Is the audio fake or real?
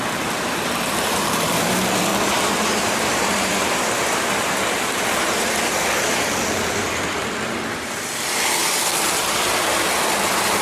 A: fake